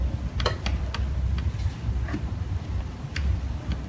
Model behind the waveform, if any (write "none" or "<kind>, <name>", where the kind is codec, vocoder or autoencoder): none